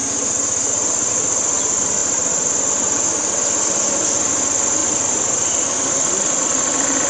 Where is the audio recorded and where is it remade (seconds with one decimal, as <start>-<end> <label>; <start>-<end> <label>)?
0.0-7.1 recorded